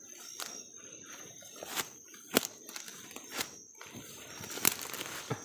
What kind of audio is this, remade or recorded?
recorded